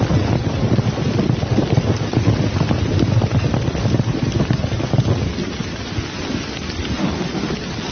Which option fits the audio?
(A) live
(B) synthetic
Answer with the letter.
A